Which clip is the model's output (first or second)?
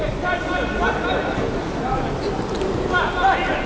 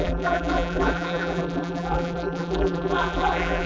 second